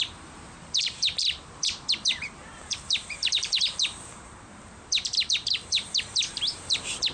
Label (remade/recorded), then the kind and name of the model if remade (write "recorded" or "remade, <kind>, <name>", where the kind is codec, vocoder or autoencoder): remade, vocoder, BigVGAN v2